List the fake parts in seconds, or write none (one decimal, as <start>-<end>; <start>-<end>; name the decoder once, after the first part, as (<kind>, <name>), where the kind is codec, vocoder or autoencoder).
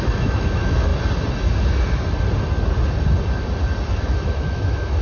0.0-0.9 (autoencoder, DAC-VAE); 3.9-5.0